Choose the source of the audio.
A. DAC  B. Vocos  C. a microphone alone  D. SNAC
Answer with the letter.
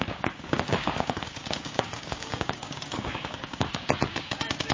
A